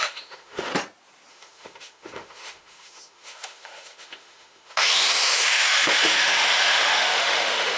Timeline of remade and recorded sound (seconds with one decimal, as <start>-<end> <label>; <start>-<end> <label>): 0.0-0.7 remade; 0.7-1.3 recorded; 1.3-7.8 remade